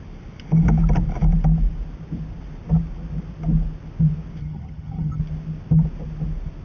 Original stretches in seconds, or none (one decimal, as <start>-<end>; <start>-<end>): 0.0-4.4; 5.2-6.6

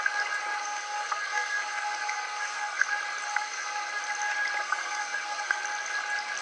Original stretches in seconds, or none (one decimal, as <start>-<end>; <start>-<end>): 0.0-0.6; 2.9-3.3; 4.0-4.6; 5.6-6.4